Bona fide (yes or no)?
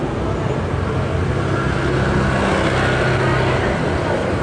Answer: yes